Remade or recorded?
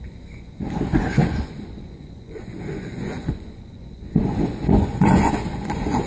remade